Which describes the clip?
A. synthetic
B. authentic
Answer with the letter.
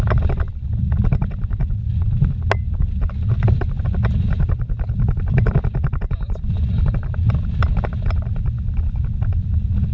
B